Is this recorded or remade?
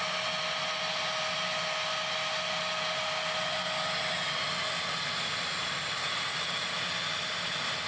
recorded